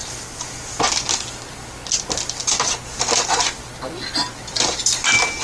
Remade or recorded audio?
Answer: recorded